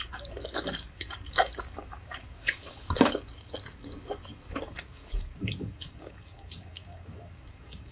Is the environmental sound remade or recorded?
remade